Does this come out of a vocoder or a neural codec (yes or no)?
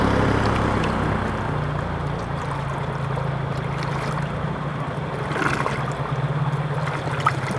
no